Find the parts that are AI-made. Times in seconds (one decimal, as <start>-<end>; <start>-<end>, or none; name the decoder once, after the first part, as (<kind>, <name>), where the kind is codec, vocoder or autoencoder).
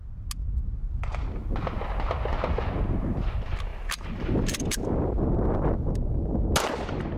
3.7-5.6 (vocoder, BigVGAN v2)